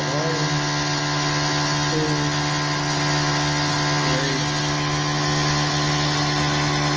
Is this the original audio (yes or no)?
yes